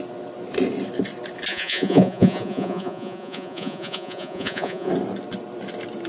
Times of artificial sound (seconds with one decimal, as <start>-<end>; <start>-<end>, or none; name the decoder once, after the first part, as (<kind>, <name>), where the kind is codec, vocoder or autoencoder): 1.5-4.9 (vocoder, Vocos)